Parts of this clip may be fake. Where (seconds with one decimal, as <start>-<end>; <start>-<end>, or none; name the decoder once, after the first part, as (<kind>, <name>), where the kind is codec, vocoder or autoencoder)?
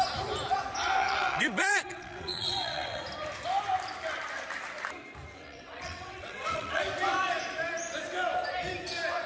1.0-3.0 (vocoder, WaveNeXt); 5.3-6.8